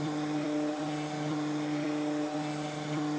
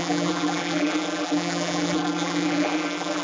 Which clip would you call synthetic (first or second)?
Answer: second